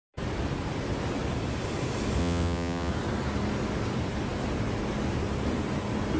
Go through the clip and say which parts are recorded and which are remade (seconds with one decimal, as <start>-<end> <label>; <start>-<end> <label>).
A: 0.0-2.2 recorded; 2.2-2.9 remade; 2.9-6.2 recorded